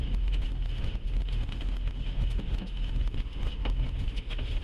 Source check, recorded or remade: remade